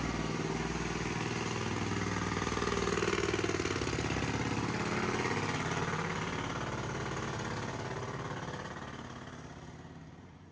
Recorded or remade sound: recorded